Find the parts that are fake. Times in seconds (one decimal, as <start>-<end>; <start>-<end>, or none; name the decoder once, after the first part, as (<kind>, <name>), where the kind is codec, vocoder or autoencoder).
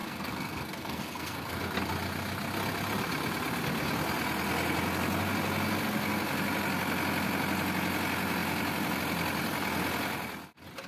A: 0.0-1.6 (codec, SNAC)